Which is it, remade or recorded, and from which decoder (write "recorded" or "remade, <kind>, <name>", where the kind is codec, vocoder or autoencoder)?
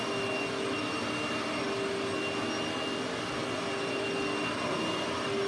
recorded